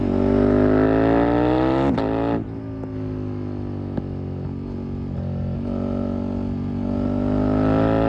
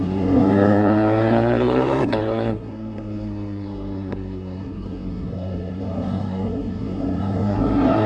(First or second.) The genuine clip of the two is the first